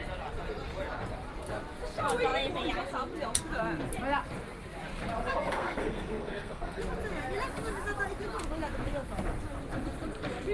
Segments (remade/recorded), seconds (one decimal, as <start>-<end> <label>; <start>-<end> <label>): 0.0-5.2 recorded; 5.2-6.8 remade; 6.8-10.5 recorded